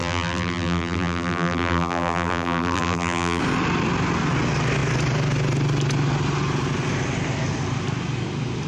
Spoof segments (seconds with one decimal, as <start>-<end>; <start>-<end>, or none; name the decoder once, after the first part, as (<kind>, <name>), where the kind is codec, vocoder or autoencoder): 0.0-3.4 (vocoder, BigVGAN v2)